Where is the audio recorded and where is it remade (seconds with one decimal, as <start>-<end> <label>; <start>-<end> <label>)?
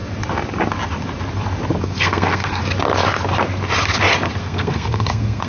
0.0-1.8 recorded; 1.8-2.6 remade; 2.6-4.4 recorded; 4.4-5.5 remade